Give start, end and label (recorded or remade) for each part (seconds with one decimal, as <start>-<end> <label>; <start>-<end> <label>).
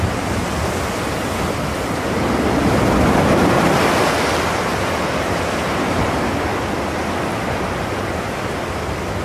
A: 0.0-9.2 recorded